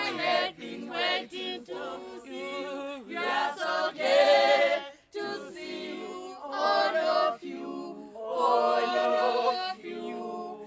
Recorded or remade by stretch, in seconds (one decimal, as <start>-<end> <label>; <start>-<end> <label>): 0.0-8.9 recorded; 8.9-9.8 remade; 9.8-10.7 recorded